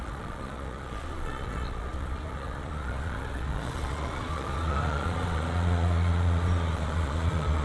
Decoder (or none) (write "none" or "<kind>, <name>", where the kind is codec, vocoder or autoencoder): vocoder, Vocos